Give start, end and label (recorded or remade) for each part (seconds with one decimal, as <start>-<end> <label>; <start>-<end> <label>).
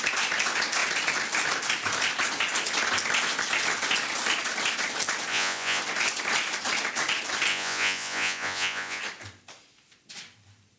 0.0-5.3 recorded; 5.3-5.8 remade; 5.8-7.5 recorded; 7.5-9.0 remade; 9.0-10.8 recorded